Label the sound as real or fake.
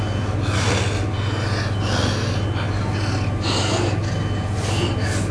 real